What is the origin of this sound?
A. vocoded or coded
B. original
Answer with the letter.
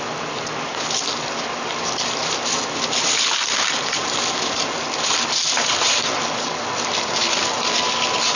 B